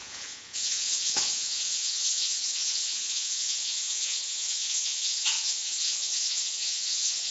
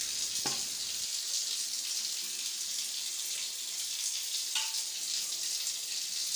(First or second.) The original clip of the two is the second